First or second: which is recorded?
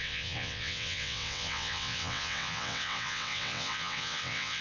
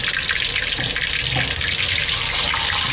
second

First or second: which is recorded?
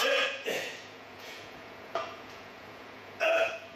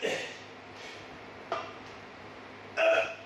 second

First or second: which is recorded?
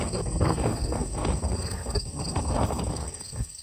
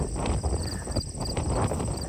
second